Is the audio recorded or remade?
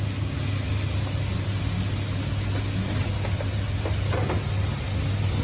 recorded